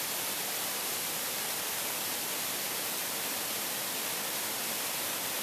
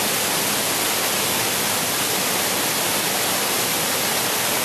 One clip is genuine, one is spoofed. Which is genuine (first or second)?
second